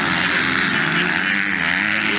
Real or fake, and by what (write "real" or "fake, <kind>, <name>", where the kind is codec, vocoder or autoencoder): real